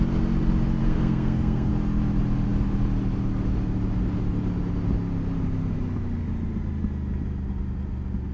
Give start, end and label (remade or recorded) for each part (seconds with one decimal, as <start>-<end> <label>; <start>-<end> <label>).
0.0-0.8 recorded; 0.8-1.7 remade; 1.7-8.3 recorded